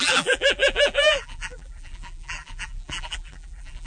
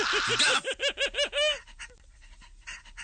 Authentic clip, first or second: second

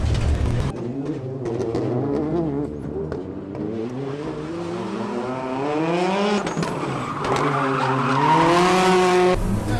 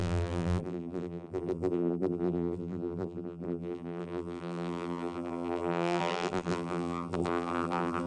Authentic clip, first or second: first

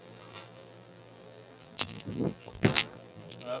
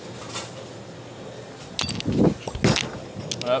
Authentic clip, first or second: second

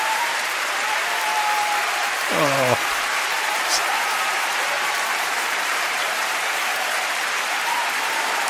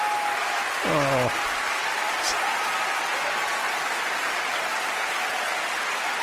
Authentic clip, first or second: second